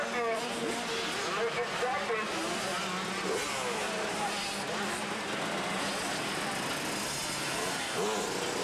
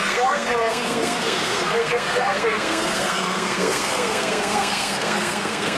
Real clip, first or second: first